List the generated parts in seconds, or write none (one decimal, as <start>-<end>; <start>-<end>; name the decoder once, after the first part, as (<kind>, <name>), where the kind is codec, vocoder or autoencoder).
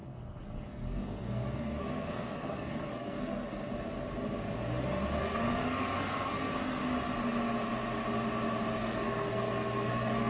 0.0-3.7 (codec, SNAC); 5.2-6.8; 8.8-10.3